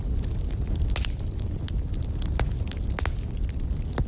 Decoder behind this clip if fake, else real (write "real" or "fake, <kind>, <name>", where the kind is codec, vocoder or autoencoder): real